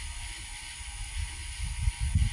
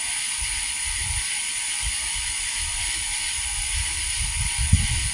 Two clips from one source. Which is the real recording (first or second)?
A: first